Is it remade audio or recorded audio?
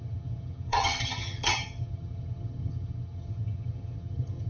remade